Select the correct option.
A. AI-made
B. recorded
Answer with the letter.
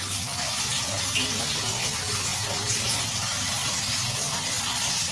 B